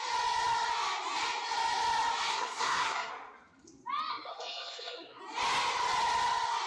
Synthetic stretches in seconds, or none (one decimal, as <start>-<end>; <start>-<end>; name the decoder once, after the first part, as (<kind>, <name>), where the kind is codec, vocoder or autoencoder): 2.3-3.1 (codec, SNAC); 4.1-5.2